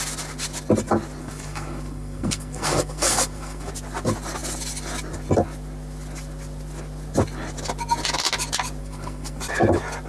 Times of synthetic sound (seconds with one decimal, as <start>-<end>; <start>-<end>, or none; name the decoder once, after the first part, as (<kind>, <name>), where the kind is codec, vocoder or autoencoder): 1.2-3.7 (codec, SNAC); 8.8-9.4